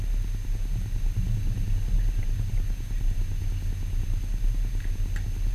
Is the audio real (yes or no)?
yes